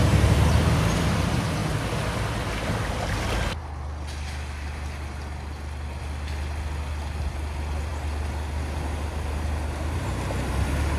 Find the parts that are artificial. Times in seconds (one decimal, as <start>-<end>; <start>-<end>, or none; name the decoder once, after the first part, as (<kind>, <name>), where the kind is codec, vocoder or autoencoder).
none